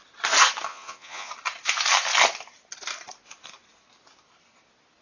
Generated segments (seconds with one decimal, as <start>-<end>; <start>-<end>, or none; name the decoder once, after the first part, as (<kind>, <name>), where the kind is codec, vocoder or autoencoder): 0.7-1.3 (vocoder, Vocos)